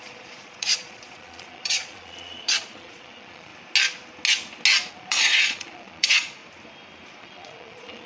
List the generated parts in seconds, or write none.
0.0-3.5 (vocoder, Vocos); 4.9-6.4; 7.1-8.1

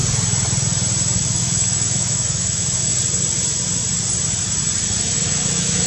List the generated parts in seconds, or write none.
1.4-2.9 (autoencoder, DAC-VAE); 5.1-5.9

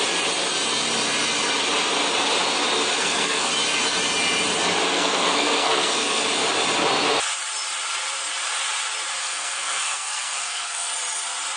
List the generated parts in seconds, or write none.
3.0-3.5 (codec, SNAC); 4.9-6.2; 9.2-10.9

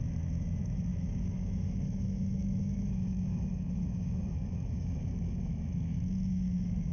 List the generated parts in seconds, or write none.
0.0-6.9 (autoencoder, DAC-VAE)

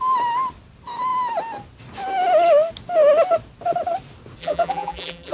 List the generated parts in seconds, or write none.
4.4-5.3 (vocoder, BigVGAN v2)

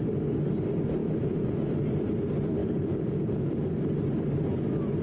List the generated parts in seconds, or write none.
1.0-1.6 (vocoder, Vocos); 2.6-3.5

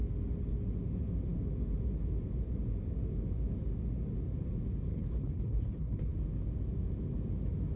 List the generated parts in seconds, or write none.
4.9-6.1 (codec, HILCodec)

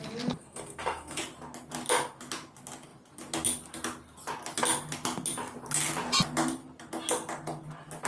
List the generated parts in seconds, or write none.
0.4-1.2 (codec, SNAC)